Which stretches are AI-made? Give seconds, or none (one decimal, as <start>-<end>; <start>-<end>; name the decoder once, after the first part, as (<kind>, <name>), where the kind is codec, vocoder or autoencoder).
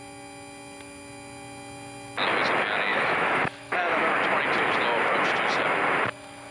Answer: 2.9-4.1 (autoencoder, DAC-VAE)